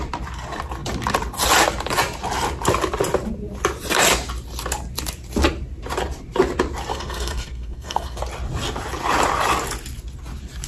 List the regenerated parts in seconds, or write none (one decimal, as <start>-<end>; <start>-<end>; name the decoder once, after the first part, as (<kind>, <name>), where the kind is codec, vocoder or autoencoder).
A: 6.9-8.2 (codec, SNAC)